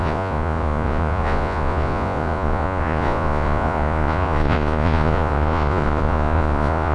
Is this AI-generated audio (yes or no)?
yes